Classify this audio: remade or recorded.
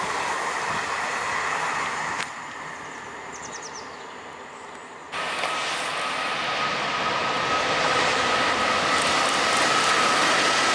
recorded